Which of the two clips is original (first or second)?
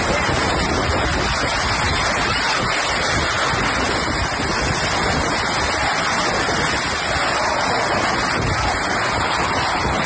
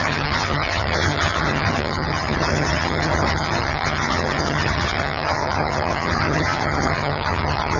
first